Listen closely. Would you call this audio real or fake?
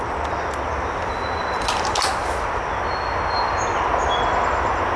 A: real